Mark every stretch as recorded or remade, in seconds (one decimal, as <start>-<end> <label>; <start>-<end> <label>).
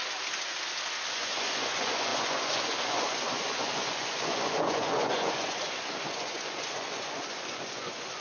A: 0.0-1.1 recorded; 1.1-8.2 remade